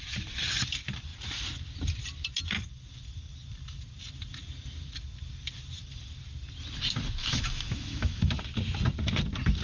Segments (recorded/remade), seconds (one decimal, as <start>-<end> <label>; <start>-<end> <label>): 0.0-7.2 recorded; 7.2-8.4 remade; 8.4-9.6 recorded